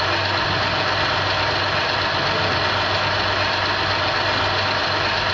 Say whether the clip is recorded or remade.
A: recorded